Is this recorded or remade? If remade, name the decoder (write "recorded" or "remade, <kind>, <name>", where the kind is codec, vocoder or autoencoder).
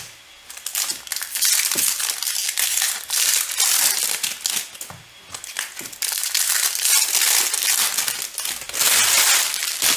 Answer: recorded